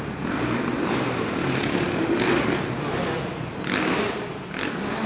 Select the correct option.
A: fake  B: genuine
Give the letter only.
B